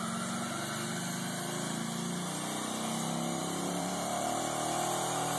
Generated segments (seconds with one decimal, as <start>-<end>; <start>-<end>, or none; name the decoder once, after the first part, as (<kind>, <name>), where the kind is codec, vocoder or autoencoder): 3.4-4.4 (vocoder, BigVGAN v2)